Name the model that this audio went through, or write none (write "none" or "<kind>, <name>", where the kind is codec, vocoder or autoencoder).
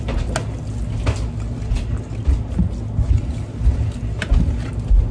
none